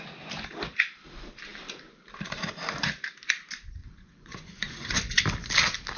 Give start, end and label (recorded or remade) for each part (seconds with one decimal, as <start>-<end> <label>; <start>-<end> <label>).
0.0-3.8 recorded; 3.8-5.2 remade; 5.2-6.0 recorded